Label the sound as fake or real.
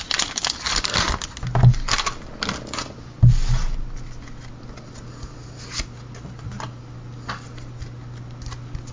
real